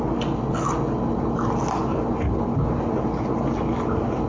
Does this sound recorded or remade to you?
recorded